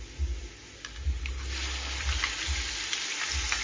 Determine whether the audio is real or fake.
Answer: real